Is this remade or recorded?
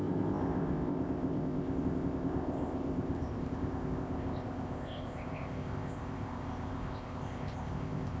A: remade